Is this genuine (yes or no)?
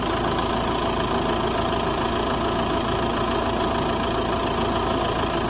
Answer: yes